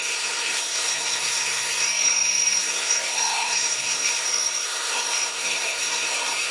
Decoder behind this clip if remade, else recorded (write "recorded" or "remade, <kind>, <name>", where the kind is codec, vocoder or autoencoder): remade, codec, SNAC